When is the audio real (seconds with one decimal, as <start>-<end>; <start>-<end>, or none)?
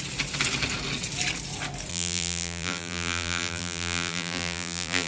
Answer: 0.0-1.9